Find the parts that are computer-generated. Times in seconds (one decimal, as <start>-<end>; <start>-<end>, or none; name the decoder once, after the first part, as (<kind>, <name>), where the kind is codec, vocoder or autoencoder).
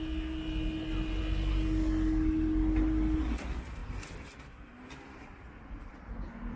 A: none